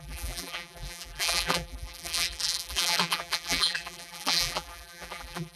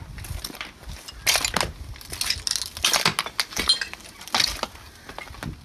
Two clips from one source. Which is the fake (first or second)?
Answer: first